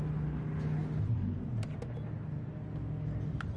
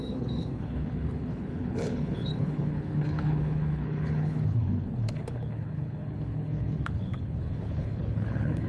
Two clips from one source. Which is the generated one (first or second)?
second